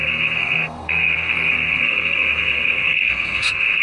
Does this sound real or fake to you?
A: fake